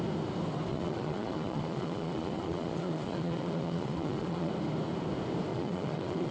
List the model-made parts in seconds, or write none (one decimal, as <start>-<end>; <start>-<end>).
0.7-4.5; 5.5-6.3